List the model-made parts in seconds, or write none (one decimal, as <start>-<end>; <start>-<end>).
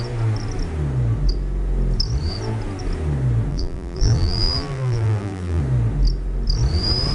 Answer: 3.5-5.6